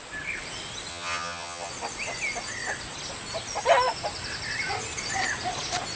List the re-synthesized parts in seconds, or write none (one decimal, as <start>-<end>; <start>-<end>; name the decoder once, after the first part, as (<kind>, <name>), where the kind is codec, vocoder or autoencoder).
0.9-1.7 (vocoder, HiFi-GAN)